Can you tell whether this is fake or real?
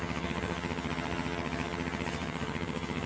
fake